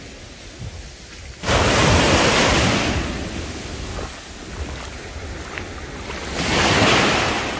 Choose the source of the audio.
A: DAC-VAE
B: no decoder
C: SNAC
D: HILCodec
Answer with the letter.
B